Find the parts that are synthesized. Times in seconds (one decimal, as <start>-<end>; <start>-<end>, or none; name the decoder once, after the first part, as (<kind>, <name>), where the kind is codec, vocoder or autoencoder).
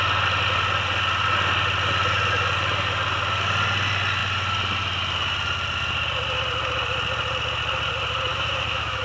8.3-9.0 (autoencoder, DAC-VAE)